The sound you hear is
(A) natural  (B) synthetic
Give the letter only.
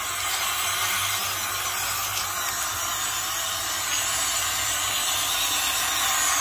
A